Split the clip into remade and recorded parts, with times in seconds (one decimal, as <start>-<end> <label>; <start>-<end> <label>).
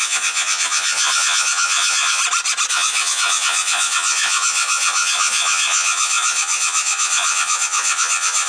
0.0-2.2 remade; 2.2-2.7 recorded; 2.7-8.5 remade